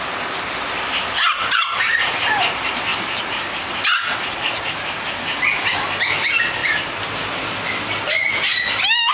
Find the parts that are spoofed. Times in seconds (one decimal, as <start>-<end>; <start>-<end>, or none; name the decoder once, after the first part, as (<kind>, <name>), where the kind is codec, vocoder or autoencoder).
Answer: 2.9-3.7 (vocoder, BigVGAN v2)